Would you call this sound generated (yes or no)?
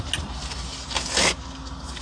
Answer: no